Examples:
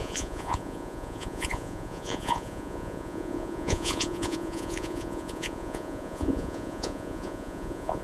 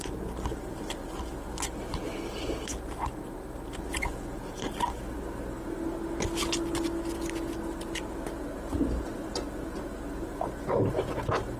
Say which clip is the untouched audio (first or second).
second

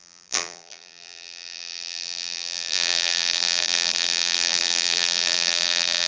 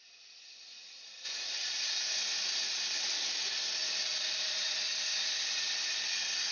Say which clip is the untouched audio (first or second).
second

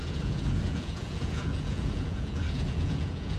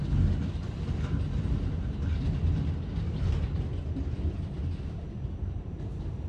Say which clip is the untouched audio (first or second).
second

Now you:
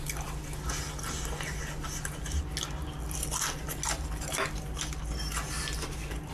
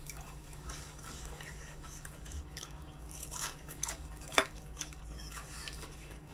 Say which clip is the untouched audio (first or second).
first